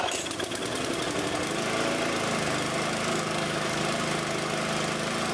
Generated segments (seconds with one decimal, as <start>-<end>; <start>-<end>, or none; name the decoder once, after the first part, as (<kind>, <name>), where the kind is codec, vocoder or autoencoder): 3.1-3.8 (codec, DAC)